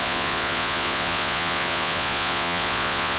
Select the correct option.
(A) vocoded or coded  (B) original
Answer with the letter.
A